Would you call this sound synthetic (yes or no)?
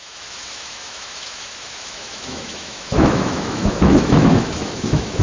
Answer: yes